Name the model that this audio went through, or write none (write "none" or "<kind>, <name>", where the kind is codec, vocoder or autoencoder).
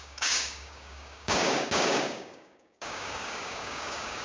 codec, DAC